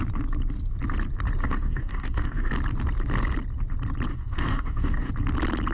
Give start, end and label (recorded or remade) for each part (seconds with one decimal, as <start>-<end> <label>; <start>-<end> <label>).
0.0-1.4 recorded; 1.4-2.5 remade; 2.5-4.1 recorded; 4.1-5.1 remade; 5.1-5.7 recorded